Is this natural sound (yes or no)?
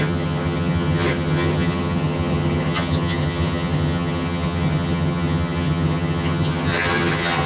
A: no